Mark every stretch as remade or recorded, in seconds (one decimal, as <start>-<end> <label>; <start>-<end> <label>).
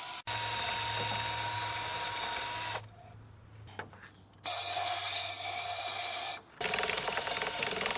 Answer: 0.0-8.0 recorded